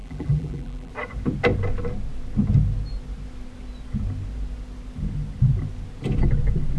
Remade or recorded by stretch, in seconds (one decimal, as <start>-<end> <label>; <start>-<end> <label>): 0.0-0.9 remade; 0.9-6.8 recorded